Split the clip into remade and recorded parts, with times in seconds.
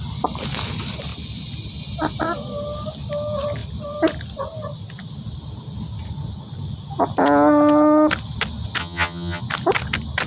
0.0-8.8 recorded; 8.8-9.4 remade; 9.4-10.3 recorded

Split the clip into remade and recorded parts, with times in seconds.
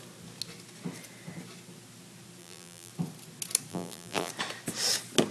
0.0-2.4 recorded; 2.4-2.9 remade; 2.9-3.7 recorded; 3.7-4.3 remade; 4.3-5.3 recorded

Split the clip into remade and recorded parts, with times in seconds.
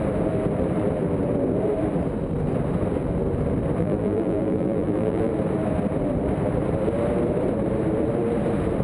0.0-3.8 recorded; 3.8-5.3 remade; 5.3-8.8 recorded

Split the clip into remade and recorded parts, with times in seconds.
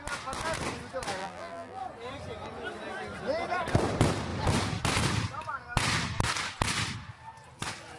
0.0-1.2 recorded; 1.2-1.8 remade; 1.8-8.0 recorded